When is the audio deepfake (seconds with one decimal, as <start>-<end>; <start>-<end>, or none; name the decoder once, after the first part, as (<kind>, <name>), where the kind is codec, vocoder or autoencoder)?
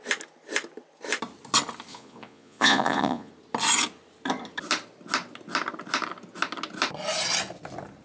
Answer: 1.9-3.3 (vocoder, Vocos)